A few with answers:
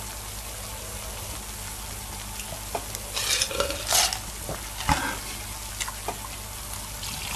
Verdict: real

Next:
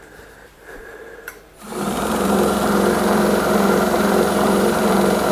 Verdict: fake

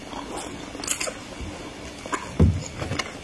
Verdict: real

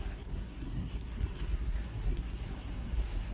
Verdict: fake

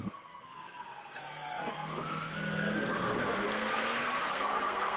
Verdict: fake